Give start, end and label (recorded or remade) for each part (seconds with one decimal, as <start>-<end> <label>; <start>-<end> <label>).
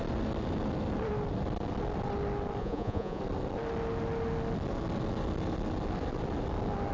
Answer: 0.0-2.6 recorded; 2.6-3.2 remade; 3.2-6.9 recorded